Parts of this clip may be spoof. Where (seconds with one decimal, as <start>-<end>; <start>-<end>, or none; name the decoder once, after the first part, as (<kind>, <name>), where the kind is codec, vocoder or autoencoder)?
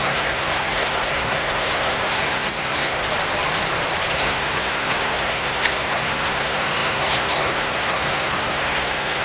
0.0-3.0 (codec, SNAC); 4.1-9.2